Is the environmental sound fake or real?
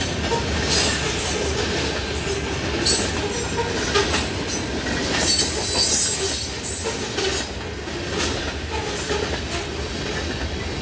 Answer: real